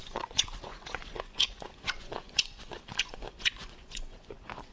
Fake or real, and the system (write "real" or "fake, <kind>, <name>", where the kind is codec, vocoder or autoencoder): fake, vocoder, Vocos